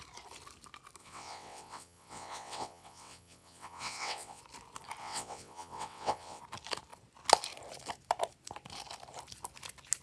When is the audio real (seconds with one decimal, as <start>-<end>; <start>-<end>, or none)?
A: 0.0-1.0; 4.4-5.0; 6.4-10.0